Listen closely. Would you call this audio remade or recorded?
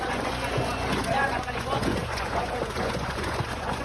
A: remade